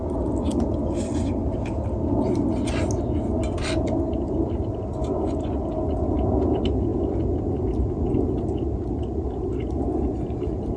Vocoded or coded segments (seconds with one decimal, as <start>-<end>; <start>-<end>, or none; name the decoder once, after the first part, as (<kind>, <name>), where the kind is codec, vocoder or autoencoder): none